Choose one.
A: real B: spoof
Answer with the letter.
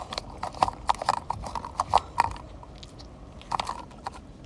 A